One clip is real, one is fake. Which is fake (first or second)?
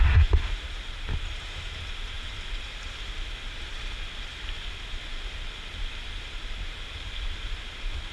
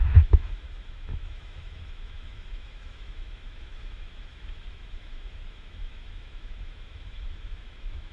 second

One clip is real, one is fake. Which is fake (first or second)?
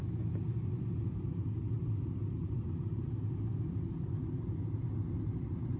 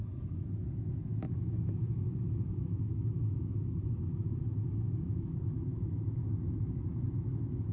second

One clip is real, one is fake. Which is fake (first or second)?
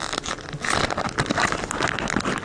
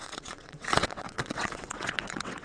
second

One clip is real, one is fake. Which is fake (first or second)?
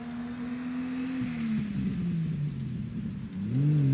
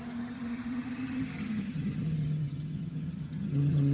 second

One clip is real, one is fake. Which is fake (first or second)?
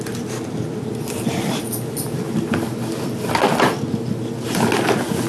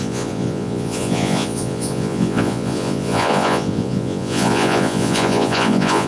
second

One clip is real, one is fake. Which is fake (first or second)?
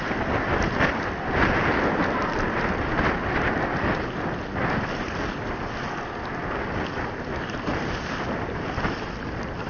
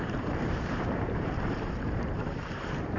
second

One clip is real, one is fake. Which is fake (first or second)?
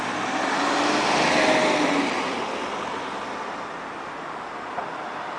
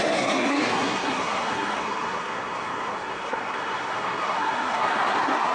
second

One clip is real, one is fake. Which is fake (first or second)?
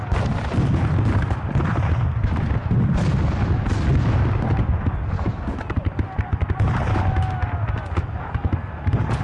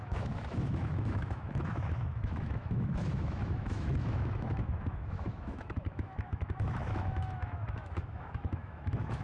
second